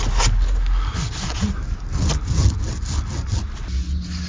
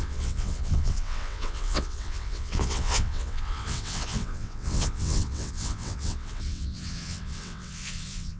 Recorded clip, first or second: first